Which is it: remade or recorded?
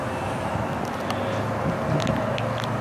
recorded